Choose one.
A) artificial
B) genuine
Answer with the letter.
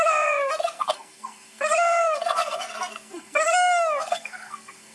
A